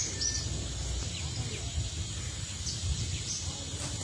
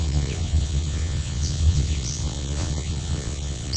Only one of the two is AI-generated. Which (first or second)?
second